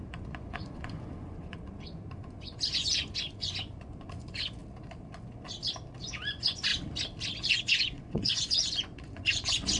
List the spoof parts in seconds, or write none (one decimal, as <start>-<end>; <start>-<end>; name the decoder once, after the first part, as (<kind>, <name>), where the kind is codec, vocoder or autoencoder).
0.0-4.6 (vocoder, Vocos); 6.0-6.7; 7.5-9.8